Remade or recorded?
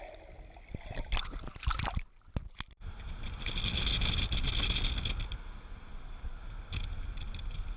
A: recorded